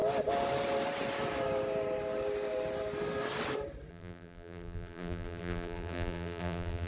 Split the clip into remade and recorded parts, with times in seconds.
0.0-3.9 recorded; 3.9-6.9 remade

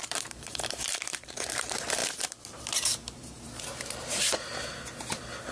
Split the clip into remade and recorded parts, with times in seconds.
0.0-5.5 remade

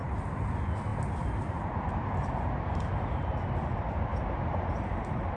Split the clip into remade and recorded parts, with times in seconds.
0.0-0.9 recorded; 0.9-2.9 remade; 2.9-4.1 recorded; 4.1-4.9 remade; 4.9-5.4 recorded

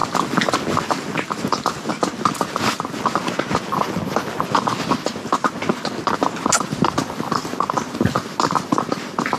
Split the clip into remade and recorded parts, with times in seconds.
0.0-1.9 remade; 1.9-9.4 recorded